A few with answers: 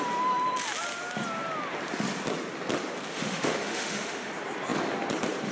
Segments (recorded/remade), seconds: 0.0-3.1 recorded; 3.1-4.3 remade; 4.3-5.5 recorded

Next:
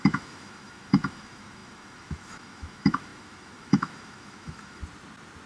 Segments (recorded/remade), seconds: 0.0-4.8 remade; 4.8-5.5 recorded

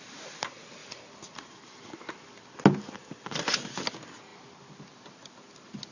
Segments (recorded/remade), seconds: 0.0-5.9 recorded